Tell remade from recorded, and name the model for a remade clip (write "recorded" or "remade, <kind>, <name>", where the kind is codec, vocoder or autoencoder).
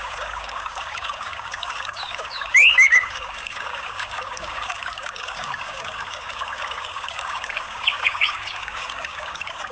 remade, codec, DAC